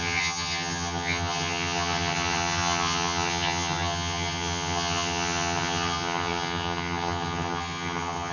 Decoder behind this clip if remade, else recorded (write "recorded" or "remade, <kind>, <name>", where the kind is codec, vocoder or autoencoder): remade, vocoder, HiFi-GAN